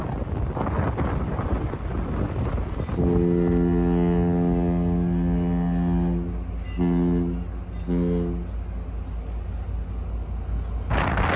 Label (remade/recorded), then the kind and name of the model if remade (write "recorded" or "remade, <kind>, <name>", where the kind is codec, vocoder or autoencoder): recorded